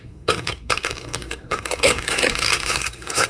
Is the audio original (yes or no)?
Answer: no